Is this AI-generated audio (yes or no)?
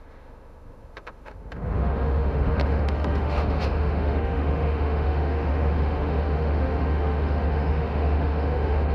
yes